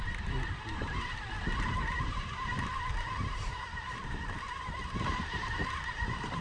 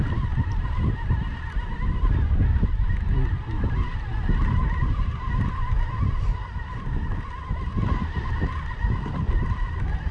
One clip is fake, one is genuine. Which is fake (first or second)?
first